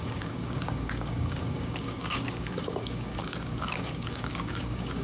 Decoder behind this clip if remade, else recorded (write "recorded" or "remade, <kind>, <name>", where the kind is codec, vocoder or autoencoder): remade, codec, DAC